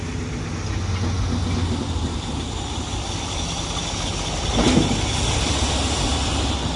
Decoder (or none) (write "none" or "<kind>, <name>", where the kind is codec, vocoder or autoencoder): none